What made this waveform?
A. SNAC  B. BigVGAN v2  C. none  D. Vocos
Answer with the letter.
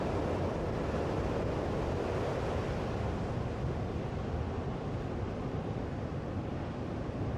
C